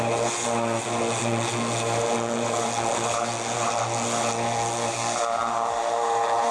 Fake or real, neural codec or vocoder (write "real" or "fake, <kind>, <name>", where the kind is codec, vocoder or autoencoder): real